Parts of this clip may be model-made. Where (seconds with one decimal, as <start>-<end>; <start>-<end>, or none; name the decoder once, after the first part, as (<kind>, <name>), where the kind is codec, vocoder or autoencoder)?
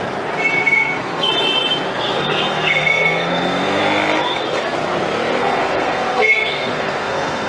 0.6-1.3 (codec, SNAC); 1.9-3.8; 5.4-7.5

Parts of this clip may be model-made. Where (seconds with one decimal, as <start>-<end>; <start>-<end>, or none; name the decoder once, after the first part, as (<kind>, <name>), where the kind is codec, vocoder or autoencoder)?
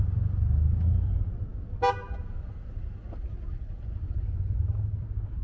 none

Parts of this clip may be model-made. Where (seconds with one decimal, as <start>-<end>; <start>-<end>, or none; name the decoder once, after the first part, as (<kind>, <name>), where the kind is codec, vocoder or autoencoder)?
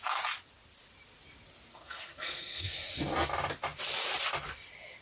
1.7-3.0 (codec, SNAC)